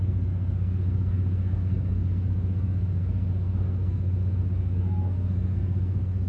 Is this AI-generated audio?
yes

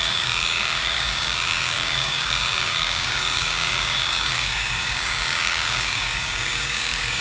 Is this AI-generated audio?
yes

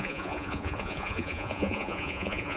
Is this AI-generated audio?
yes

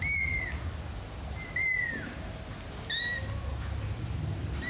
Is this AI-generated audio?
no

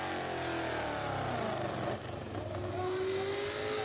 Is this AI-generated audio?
no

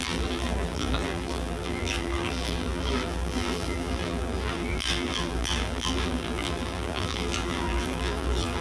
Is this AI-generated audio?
yes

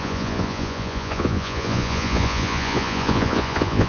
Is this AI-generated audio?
yes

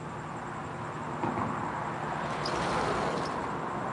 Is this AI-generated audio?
no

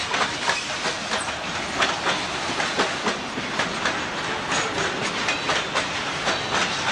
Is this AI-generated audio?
no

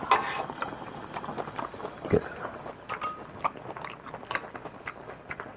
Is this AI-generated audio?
no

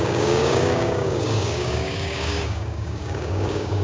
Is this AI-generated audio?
yes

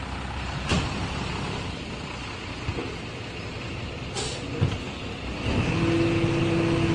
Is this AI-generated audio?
no